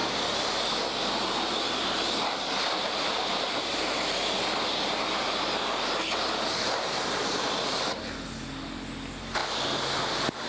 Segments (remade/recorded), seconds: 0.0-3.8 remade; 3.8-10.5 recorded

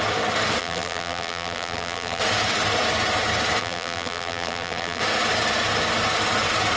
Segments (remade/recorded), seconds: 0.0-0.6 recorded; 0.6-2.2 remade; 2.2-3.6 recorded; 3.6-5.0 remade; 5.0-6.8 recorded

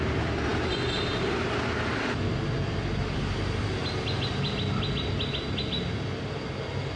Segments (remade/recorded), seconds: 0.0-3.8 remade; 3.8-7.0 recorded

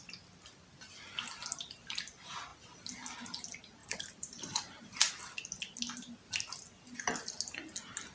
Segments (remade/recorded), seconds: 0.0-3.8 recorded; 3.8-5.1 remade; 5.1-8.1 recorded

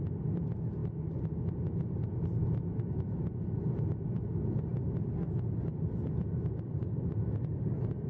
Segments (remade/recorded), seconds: 0.0-8.1 recorded

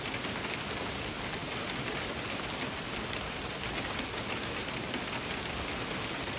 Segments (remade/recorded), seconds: 0.0-6.4 recorded

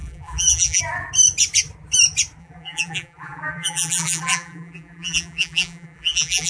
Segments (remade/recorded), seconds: 0.0-0.8 remade; 0.8-2.4 recorded; 2.4-6.5 remade

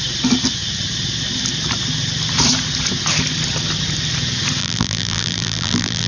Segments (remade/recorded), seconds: 0.0-4.6 recorded; 4.6-6.1 remade